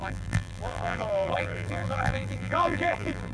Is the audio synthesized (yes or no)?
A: yes